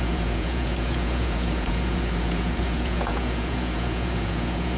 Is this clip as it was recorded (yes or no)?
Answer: no